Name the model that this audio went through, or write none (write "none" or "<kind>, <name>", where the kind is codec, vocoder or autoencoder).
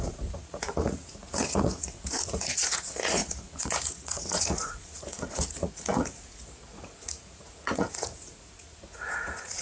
vocoder, Vocos